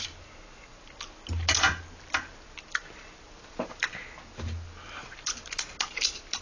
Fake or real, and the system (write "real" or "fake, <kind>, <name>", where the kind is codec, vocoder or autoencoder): real